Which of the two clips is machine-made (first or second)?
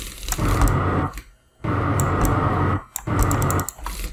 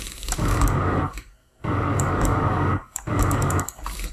second